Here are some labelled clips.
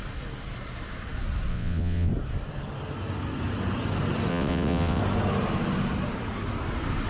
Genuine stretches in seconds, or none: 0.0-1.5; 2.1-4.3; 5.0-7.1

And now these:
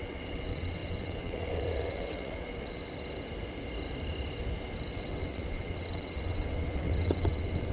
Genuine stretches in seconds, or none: 2.8-4.9

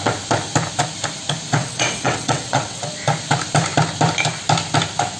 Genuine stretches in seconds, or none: 0.0-1.6; 2.8-5.2

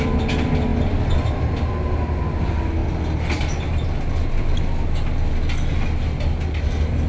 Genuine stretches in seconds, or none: 0.0-7.1